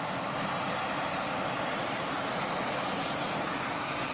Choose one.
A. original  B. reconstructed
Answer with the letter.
A